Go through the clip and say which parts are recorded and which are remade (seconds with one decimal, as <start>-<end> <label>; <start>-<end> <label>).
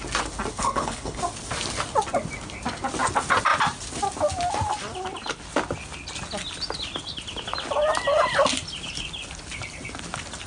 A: 0.0-0.5 recorded; 0.5-1.2 remade; 1.2-10.5 recorded